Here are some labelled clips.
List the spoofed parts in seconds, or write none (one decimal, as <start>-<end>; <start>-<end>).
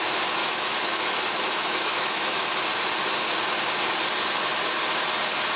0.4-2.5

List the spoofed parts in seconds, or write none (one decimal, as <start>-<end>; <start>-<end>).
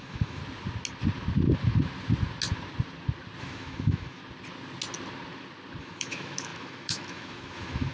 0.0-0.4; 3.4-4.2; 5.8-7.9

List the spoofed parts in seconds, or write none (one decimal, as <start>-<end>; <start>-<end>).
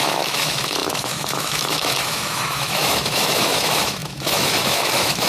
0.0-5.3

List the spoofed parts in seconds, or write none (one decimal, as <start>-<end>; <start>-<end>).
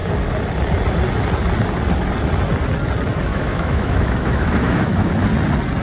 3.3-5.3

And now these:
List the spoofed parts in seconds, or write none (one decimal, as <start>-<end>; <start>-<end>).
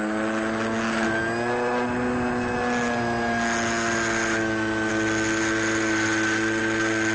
none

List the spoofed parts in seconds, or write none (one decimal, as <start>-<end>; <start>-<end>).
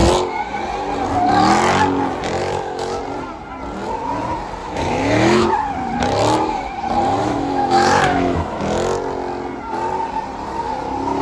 2.4-3.0; 4.6-5.5; 7.2-8.6